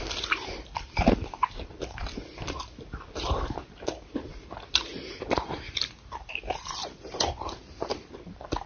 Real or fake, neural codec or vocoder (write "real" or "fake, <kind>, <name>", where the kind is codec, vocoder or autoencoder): fake, vocoder, BigVGAN v2